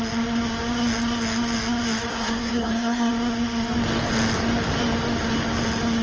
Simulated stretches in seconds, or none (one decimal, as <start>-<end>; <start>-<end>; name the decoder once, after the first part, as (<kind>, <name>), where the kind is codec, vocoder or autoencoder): 2.1-3.1 (codec, SNAC)